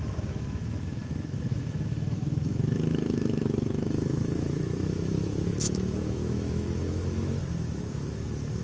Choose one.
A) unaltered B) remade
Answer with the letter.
B